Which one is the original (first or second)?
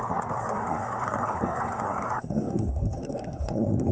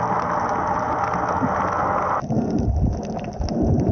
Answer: second